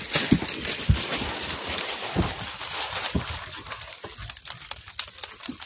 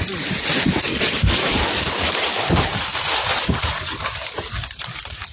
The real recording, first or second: first